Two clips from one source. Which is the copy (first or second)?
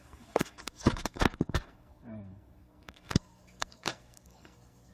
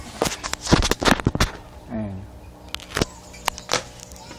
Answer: first